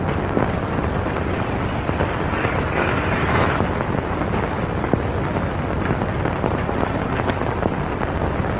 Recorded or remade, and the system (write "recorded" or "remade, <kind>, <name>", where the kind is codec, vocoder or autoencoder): recorded